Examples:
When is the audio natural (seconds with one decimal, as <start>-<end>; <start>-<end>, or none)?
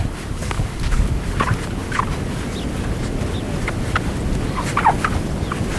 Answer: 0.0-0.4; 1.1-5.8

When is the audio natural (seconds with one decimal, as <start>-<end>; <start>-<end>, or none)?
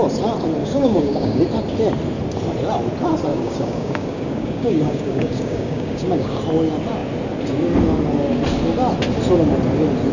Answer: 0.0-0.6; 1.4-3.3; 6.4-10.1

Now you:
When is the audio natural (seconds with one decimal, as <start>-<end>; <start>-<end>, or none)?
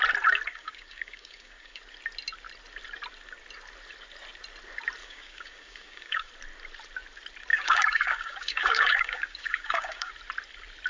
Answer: 0.0-0.5; 1.8-5.0; 6.3-7.5; 10.1-10.9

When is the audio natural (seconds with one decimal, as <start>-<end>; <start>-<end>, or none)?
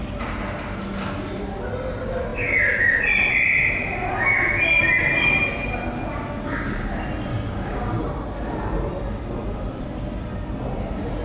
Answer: 0.0-7.3; 8.0-11.2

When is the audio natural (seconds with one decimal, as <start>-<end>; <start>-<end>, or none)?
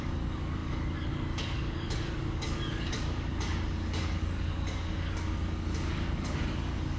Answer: none